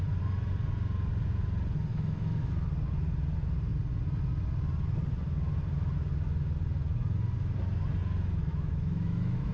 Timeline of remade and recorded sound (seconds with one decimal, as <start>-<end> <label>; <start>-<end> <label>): 0.0-1.9 recorded; 1.9-2.5 remade; 2.5-8.5 recorded; 8.5-9.5 remade